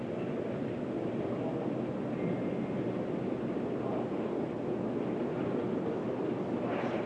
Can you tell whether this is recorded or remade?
recorded